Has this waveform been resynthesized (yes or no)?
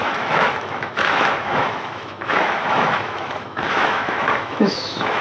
yes